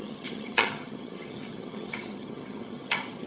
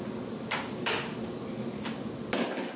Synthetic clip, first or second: first